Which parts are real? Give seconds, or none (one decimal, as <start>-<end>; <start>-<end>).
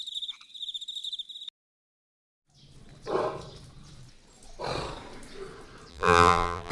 0.0-5.9